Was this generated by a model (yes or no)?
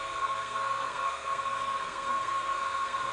yes